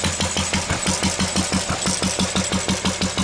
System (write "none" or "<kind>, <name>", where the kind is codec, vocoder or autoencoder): none